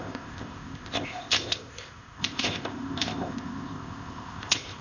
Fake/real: fake